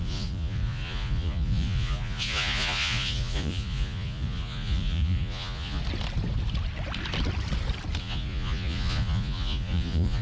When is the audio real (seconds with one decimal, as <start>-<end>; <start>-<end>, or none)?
5.8-8.0